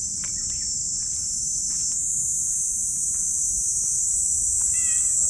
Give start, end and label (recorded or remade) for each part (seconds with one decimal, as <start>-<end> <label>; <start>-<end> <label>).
0.0-5.3 recorded